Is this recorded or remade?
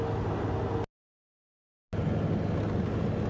recorded